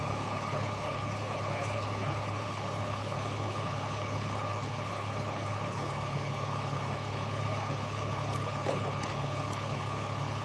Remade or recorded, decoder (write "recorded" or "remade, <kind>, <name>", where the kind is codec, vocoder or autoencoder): remade, codec, HILCodec